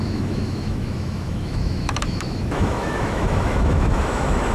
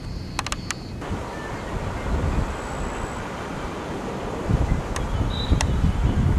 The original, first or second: second